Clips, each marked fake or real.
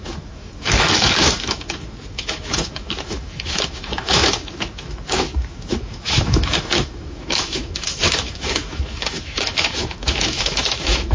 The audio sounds fake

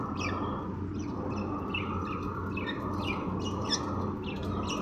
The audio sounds real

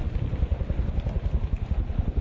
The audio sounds fake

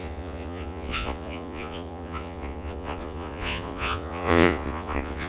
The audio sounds fake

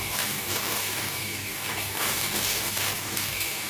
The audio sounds fake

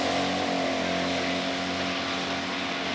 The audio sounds real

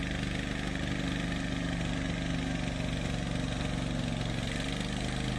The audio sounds real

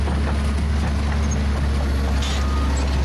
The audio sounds real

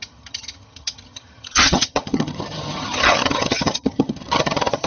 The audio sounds fake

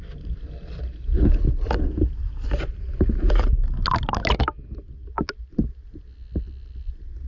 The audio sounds real